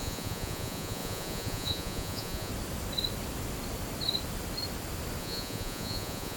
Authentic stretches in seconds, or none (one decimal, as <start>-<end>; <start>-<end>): 2.5-5.2